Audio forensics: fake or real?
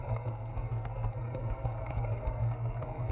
fake